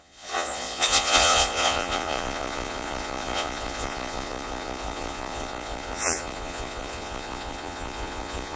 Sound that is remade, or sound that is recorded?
remade